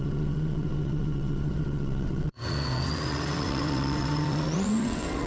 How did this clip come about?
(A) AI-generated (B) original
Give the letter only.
A